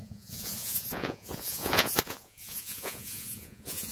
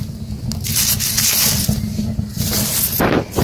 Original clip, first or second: second